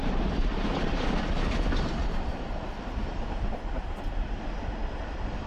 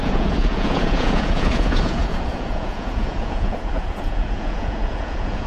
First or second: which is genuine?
first